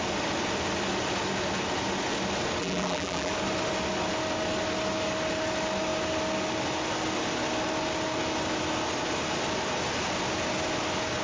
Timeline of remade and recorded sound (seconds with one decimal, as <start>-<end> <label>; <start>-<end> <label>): 0.0-2.6 recorded; 2.6-3.3 remade; 3.3-11.2 recorded